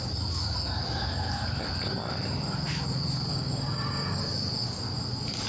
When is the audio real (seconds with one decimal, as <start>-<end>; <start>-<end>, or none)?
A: 0.0-3.3; 4.2-5.5